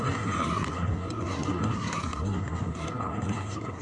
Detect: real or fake fake